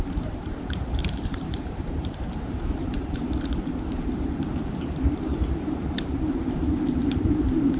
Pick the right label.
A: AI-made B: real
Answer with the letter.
A